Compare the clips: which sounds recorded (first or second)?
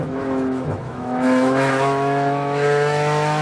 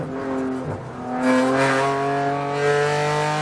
second